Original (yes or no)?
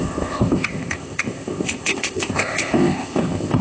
no